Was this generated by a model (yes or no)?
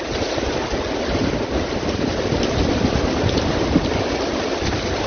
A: no